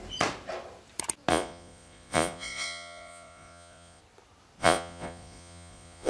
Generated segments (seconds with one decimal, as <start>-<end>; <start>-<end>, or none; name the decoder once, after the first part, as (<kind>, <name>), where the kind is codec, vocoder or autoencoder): 1.3-4.0 (vocoder, Vocos); 4.6-6.1